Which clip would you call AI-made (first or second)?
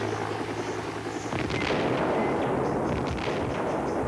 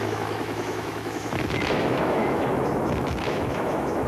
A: second